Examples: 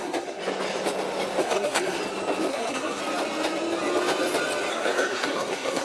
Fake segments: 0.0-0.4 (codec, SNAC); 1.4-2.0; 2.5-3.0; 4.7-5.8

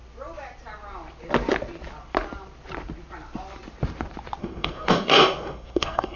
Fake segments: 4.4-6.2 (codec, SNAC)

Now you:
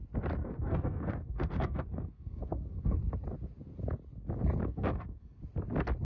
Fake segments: 0.4-3.0 (codec, SNAC); 4.6-5.4

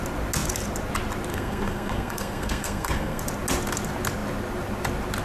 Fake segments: 1.3-3.2 (codec, SNAC)